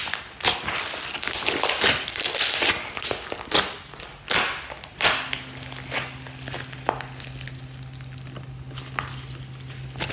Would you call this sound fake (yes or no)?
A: no